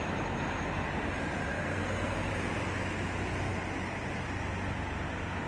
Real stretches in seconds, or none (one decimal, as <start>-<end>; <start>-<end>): 0.0-1.5; 2.3-5.5